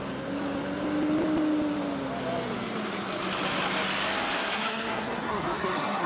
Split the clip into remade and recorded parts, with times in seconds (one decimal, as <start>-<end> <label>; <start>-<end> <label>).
0.0-4.4 recorded; 4.4-6.1 remade